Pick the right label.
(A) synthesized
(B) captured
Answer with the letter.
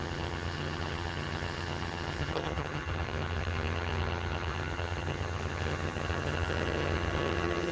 A